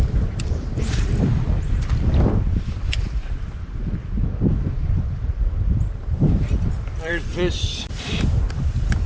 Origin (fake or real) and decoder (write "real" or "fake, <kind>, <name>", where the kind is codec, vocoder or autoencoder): fake, vocoder, BigVGAN v2